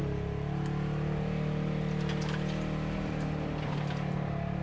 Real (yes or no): yes